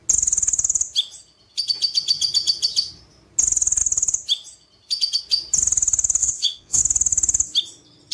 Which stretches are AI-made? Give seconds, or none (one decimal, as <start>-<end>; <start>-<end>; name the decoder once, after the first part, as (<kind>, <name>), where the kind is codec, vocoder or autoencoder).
6.2-6.8 (vocoder, WaveNeXt)